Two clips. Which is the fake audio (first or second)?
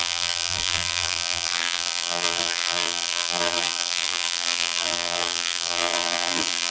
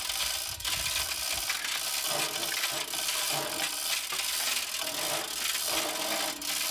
first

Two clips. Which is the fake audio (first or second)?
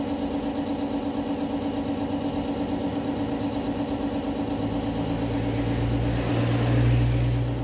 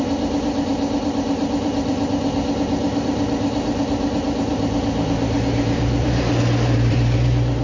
second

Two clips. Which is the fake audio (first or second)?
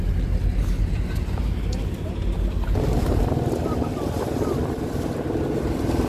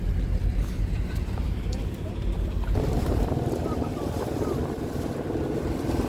second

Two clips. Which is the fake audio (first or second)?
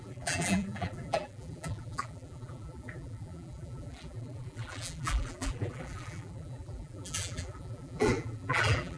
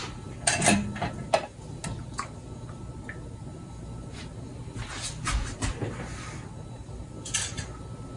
first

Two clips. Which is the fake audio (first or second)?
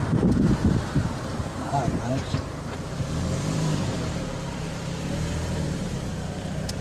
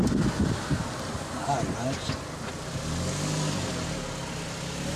first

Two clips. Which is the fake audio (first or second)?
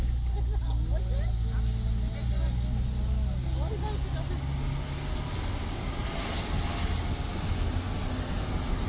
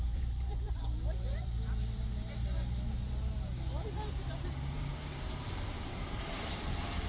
second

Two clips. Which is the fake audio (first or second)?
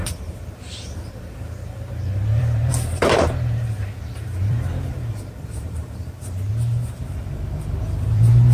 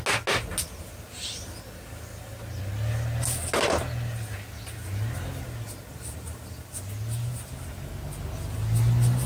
first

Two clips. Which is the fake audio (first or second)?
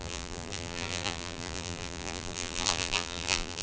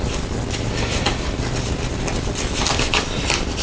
first